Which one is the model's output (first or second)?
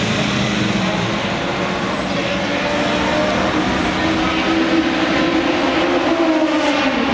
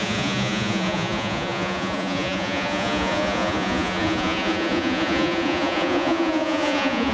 second